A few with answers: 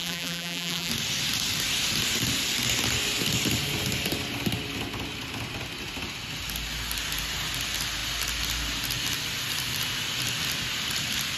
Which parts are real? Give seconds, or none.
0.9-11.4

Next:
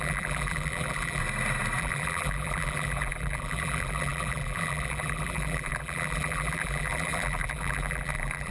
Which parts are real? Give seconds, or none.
1.2-1.8